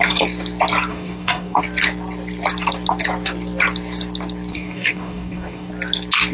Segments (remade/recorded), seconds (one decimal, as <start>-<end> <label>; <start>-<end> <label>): 0.0-0.9 recorded; 0.9-1.6 remade; 1.6-4.5 recorded; 4.5-5.7 remade; 5.7-6.3 recorded